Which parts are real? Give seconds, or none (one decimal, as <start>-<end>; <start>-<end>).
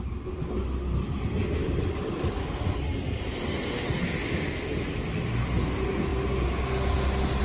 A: 0.0-1.6; 3.4-4.2; 5.4-7.4